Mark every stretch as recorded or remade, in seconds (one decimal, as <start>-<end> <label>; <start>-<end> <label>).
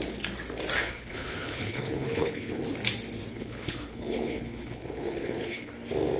0.0-0.8 recorded; 0.8-2.6 remade; 2.6-3.3 recorded; 3.3-5.7 remade; 5.7-6.2 recorded